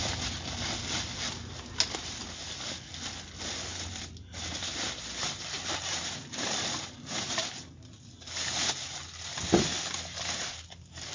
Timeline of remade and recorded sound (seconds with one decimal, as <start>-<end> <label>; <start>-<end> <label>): 0.0-3.7 recorded; 3.7-7.7 remade; 7.7-11.1 recorded